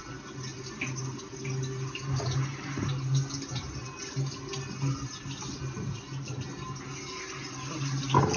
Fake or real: real